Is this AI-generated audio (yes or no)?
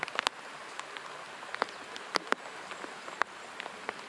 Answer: no